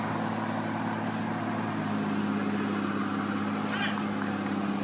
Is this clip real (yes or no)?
yes